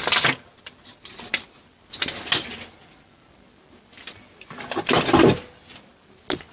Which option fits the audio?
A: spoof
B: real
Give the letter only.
B